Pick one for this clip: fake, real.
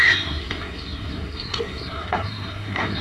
fake